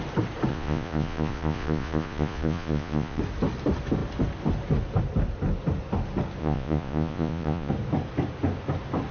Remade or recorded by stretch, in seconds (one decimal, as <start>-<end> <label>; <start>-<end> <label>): 0.0-0.5 recorded; 0.5-3.2 remade; 3.2-6.4 recorded; 6.4-7.7 remade; 7.7-9.1 recorded